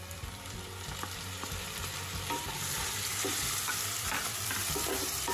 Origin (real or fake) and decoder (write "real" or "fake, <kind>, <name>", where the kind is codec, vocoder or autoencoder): fake, vocoder, BigVGAN v2